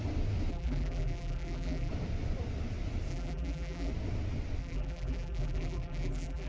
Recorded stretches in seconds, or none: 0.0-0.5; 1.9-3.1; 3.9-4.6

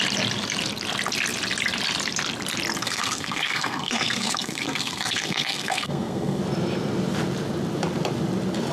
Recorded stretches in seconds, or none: 0.0-2.8; 6.4-8.7